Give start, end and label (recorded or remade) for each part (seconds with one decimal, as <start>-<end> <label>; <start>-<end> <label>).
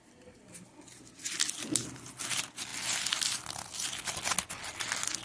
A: 0.0-5.2 recorded